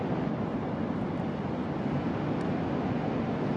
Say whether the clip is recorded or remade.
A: recorded